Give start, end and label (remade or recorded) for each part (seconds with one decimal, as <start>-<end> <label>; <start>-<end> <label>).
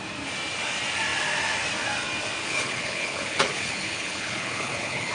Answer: 0.0-2.4 recorded; 2.4-5.1 remade